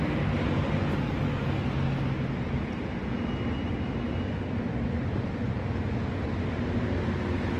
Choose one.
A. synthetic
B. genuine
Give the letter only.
B